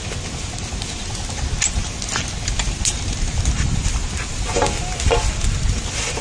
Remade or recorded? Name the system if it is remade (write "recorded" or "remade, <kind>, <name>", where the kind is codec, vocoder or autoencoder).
recorded